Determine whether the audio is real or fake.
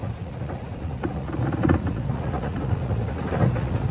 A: fake